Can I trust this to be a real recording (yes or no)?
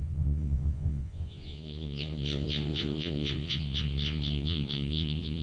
no